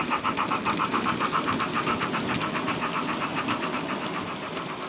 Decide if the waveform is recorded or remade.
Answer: remade